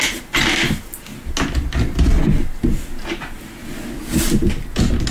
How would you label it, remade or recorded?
recorded